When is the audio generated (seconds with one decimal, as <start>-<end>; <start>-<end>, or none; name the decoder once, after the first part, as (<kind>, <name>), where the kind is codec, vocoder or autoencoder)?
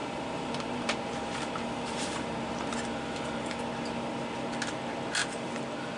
0.0-3.6 (vocoder, BigVGAN v2)